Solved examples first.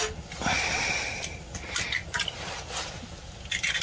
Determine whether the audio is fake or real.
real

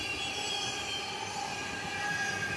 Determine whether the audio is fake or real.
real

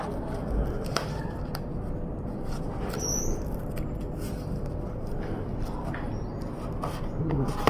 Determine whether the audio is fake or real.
real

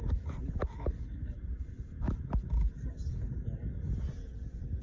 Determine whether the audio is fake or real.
real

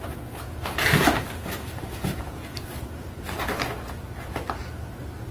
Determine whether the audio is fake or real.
real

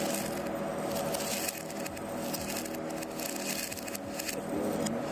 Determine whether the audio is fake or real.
real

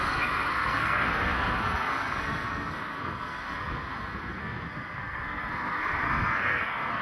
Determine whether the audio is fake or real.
fake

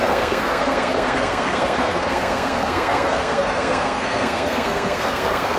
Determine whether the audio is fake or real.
fake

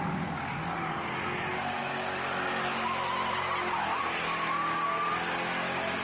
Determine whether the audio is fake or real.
real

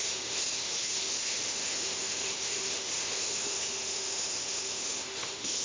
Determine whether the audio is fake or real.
fake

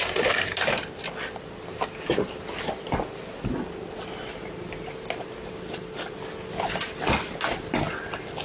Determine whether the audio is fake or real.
real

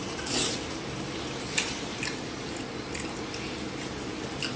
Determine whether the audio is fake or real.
real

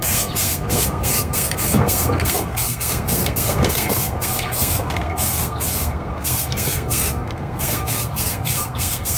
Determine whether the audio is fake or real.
fake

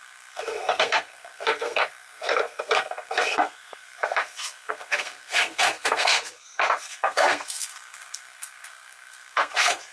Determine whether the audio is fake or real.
fake